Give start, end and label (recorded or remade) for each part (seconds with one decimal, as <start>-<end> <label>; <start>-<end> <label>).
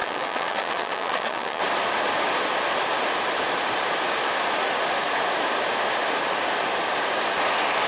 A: 0.0-1.6 remade; 1.6-7.9 recorded